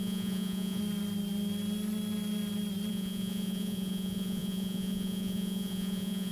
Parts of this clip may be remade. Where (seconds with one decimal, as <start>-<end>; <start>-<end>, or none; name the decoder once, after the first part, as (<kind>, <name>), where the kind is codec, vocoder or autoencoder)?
0.0-0.8 (vocoder, Vocos); 2.9-6.3